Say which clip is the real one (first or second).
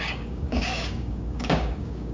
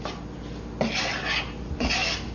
second